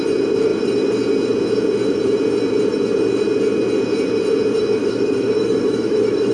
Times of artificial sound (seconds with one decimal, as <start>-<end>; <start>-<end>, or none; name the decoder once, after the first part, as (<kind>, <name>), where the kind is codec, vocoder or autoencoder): 4.8-6.3 (autoencoder, DAC-VAE)

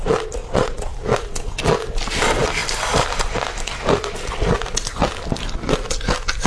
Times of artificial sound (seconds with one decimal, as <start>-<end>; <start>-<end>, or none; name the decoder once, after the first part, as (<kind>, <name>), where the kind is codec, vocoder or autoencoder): 0.4-0.9 (vocoder, Vocos)

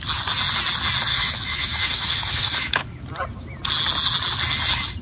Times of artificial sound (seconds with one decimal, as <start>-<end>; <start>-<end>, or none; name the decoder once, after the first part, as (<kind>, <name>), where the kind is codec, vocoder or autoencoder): 1.1-3.0 (autoencoder, DAC-VAE)

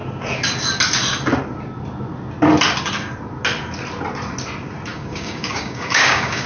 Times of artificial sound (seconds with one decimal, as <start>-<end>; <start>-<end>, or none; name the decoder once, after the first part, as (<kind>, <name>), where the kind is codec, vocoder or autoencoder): 4.9-6.5 (codec, DAC)

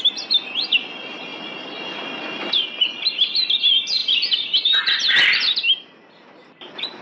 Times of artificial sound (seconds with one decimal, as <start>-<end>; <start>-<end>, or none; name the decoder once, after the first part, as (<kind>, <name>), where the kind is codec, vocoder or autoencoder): 4.0-7.0 (vocoder, BigVGAN v2)

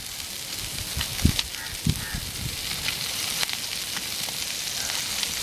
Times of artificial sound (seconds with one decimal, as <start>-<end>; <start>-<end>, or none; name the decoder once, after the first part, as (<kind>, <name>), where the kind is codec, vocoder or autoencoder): none

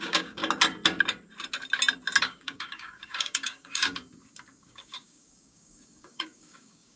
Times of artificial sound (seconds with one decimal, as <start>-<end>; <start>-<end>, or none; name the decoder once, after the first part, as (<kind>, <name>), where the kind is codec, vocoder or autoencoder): 0.0-0.4 (codec, DAC); 2.2-3.9; 4.6-7.0